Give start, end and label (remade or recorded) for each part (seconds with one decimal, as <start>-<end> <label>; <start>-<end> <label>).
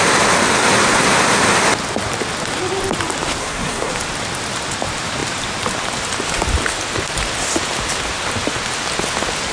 0.0-3.4 recorded; 3.4-3.9 remade; 3.9-9.5 recorded